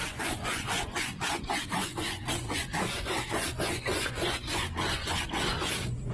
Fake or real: fake